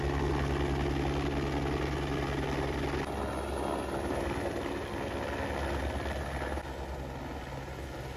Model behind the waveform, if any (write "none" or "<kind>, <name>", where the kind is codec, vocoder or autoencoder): none